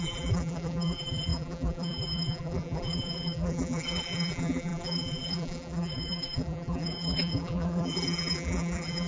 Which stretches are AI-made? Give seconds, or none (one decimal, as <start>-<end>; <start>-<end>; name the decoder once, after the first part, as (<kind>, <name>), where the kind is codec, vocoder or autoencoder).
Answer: 0.0-9.1 (vocoder, BigVGAN v2)